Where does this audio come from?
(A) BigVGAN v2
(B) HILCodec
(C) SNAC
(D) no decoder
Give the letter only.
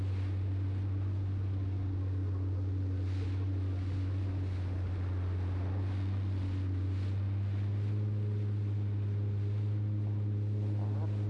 D